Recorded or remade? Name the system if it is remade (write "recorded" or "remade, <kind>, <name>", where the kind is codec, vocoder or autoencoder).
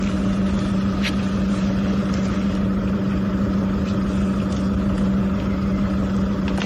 recorded